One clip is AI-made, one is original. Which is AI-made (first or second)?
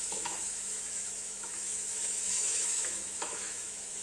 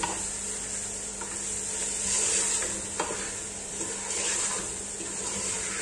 first